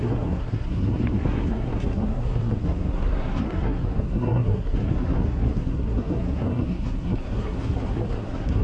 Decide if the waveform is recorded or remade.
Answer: remade